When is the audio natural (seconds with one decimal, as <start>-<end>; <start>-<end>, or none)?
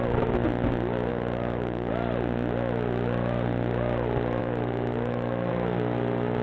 0.0-1.1; 1.9-4.4; 5.5-6.4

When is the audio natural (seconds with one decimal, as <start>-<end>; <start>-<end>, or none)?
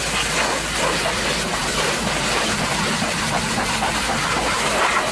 0.0-1.6; 4.1-5.1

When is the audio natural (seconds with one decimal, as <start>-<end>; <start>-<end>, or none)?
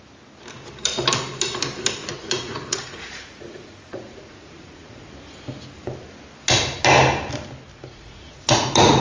0.0-2.0; 5.1-7.7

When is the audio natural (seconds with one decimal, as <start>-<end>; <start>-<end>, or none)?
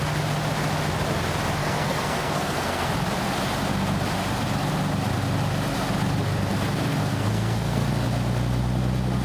0.0-1.6; 2.9-7.0; 7.9-9.2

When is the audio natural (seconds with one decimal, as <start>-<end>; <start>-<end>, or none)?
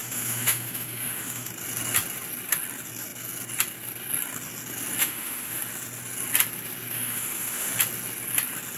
1.5-5.0; 5.6-6.9; 7.7-8.8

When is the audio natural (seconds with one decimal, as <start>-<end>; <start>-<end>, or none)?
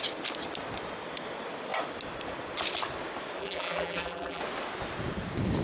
0.0-3.4; 4.4-5.6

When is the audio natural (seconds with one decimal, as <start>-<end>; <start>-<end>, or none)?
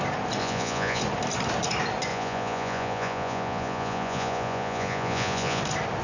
0.0-0.4; 1.0-2.1; 5.6-6.0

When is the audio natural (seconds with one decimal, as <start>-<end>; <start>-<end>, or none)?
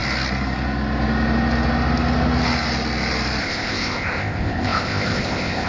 0.0-3.4